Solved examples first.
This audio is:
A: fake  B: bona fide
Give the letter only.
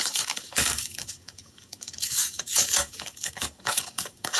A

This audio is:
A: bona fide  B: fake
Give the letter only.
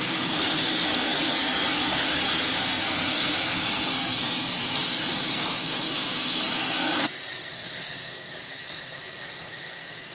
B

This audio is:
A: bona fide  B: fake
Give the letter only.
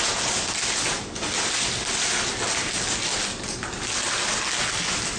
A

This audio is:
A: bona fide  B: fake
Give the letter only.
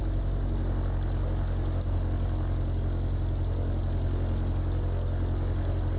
A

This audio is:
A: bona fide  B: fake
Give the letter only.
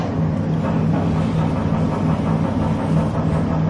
A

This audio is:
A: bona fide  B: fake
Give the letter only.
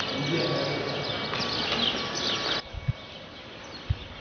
A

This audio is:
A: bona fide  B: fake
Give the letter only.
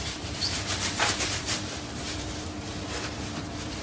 B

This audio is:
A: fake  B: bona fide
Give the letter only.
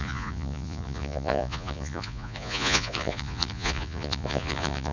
A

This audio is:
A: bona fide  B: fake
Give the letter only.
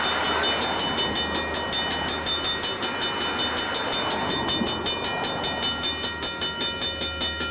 A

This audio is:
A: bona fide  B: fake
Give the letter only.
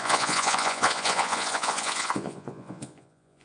B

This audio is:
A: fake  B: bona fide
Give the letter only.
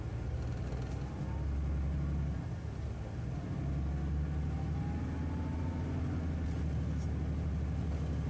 B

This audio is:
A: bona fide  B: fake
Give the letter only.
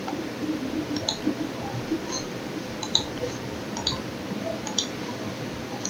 A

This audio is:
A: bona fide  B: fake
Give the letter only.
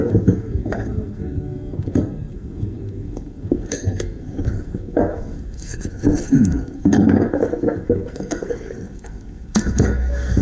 B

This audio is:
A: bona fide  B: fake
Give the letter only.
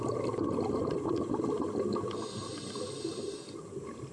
A